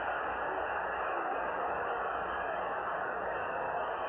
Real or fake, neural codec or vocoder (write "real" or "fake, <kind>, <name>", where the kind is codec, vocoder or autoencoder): fake, codec, DAC